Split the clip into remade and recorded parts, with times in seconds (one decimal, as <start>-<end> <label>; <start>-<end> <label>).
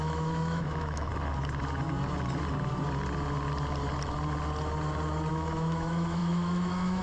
0.0-1.1 remade; 1.1-5.3 recorded; 5.3-7.0 remade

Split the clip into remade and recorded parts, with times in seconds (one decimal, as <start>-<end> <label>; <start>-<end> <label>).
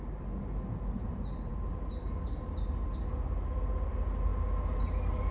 0.0-5.3 recorded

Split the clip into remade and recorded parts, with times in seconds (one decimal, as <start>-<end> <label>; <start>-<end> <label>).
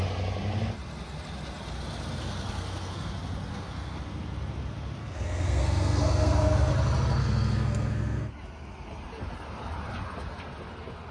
0.0-2.2 recorded; 2.2-3.1 remade; 3.1-3.5 recorded; 3.5-4.0 remade; 4.0-5.0 recorded; 5.0-6.7 remade; 6.7-7.2 recorded; 7.2-8.2 remade; 8.2-11.1 recorded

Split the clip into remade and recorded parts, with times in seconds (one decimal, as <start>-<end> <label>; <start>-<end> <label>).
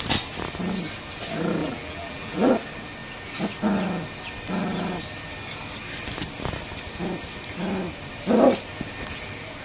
0.0-1.6 recorded; 1.6-2.5 remade; 2.5-9.6 recorded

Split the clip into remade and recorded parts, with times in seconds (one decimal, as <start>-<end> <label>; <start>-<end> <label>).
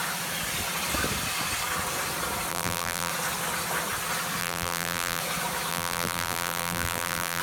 0.0-2.5 recorded; 2.5-3.1 remade; 3.1-4.4 recorded; 4.4-5.2 remade; 5.2-5.7 recorded; 5.7-7.4 remade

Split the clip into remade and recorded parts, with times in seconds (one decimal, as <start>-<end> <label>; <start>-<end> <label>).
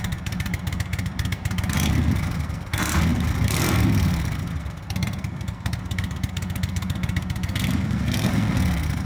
0.0-9.1 remade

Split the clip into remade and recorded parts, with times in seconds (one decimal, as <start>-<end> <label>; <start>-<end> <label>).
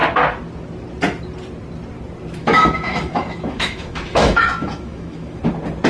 0.0-2.4 recorded; 2.4-5.4 remade; 5.4-5.9 recorded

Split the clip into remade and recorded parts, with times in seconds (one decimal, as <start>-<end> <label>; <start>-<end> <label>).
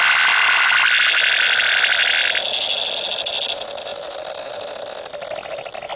0.0-6.0 recorded